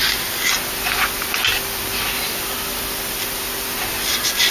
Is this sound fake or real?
real